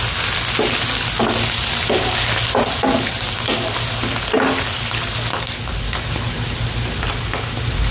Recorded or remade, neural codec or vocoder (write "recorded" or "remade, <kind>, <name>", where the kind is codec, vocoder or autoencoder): recorded